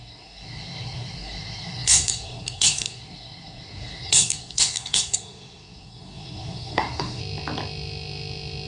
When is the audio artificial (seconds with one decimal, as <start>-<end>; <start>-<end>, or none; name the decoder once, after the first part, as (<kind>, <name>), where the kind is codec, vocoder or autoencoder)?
0.0-7.2 (codec, SNAC)